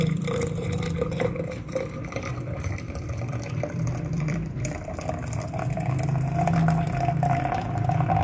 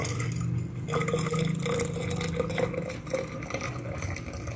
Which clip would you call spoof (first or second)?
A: first